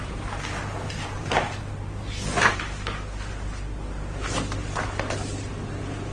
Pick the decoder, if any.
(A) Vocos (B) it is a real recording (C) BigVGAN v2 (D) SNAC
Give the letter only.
B